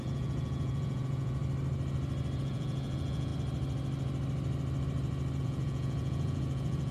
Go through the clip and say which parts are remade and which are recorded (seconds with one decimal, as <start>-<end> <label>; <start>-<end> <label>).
0.0-1.4 remade; 1.4-2.4 recorded; 2.4-3.3 remade; 3.3-5.4 recorded; 5.4-6.9 remade